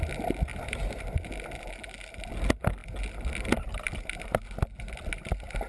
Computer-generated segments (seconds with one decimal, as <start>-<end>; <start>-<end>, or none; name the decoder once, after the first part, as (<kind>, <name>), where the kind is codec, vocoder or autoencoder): none